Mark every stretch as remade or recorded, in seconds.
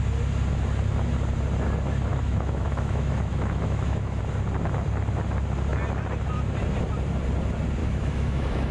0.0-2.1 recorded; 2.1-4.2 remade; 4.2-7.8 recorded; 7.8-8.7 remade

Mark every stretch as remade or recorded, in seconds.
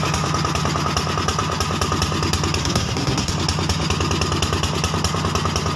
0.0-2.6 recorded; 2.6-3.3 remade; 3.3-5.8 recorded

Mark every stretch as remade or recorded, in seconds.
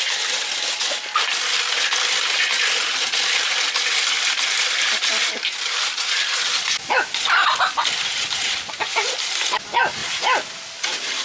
0.0-11.2 recorded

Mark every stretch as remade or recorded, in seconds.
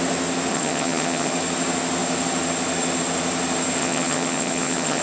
0.0-0.5 recorded; 0.5-1.3 remade; 1.3-3.8 recorded; 3.8-5.0 remade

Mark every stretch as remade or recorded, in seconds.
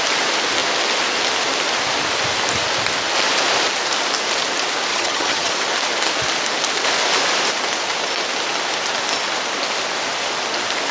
0.0-4.9 recorded; 4.9-5.5 remade; 5.5-10.9 recorded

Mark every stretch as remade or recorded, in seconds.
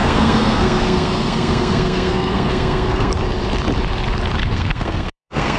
0.0-3.1 remade; 3.1-4.4 recorded; 4.4-5.6 remade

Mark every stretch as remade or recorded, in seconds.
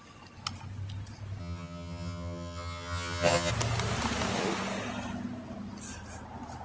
0.0-1.4 recorded; 1.4-3.5 remade; 3.5-6.6 recorded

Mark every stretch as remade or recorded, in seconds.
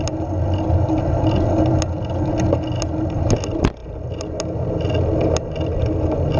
0.0-6.4 recorded